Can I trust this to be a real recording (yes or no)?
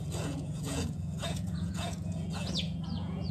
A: no